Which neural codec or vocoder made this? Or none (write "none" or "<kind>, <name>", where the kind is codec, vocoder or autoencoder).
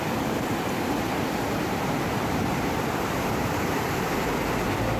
vocoder, BigVGAN v2